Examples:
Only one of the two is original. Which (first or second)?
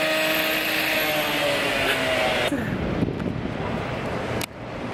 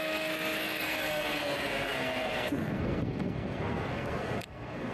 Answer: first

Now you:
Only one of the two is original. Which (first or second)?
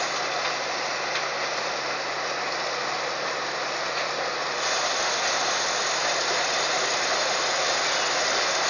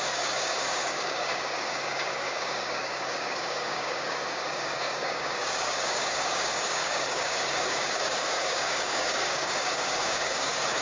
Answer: first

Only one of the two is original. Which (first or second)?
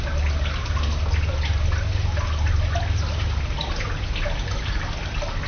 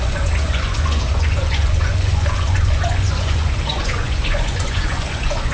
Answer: first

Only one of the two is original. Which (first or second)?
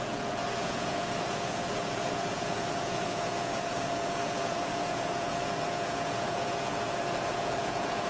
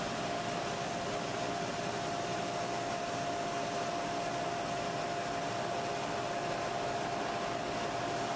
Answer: second